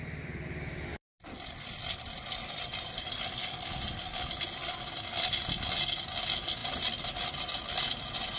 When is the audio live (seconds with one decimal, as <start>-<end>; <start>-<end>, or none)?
4.1-6.0; 6.6-7.8